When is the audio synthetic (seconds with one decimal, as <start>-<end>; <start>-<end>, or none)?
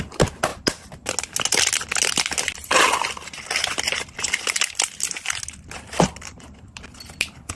none